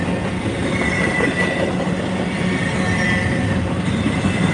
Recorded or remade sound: recorded